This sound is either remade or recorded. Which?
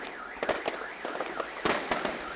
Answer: recorded